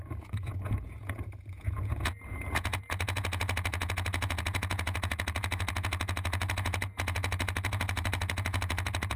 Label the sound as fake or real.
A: fake